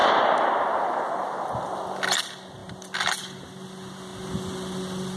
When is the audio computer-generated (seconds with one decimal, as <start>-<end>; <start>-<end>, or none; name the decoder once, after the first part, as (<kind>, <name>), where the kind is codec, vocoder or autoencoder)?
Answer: none